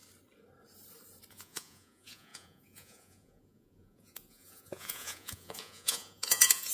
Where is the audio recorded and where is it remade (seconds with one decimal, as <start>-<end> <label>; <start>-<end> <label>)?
0.0-1.3 recorded; 1.3-6.7 remade